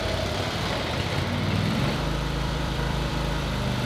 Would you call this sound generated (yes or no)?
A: yes